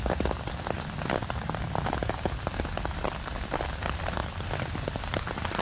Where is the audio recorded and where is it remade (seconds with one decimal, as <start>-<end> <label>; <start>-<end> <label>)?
0.0-5.6 recorded

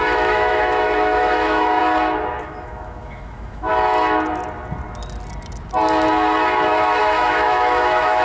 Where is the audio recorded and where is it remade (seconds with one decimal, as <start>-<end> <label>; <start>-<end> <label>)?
0.0-1.8 remade; 1.8-2.4 recorded; 2.4-3.7 remade; 3.7-7.0 recorded; 7.0-8.2 remade

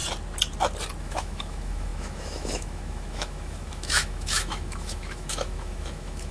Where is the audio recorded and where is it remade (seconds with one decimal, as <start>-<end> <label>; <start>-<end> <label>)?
0.0-1.0 recorded; 1.0-6.3 remade

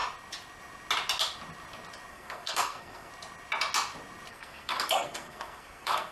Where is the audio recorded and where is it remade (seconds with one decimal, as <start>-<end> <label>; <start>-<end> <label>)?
0.0-2.1 recorded; 2.1-3.1 remade; 3.1-4.3 recorded; 4.3-6.1 remade

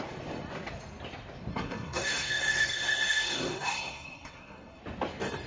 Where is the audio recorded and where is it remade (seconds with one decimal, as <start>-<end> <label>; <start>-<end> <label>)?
0.0-1.5 recorded; 1.5-4.8 remade; 4.8-5.5 recorded

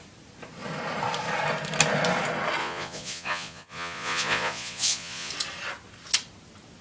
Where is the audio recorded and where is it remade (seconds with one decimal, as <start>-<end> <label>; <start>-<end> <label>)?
0.0-2.6 recorded; 2.6-5.3 remade; 5.3-6.8 recorded